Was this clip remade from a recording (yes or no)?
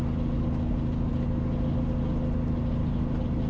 no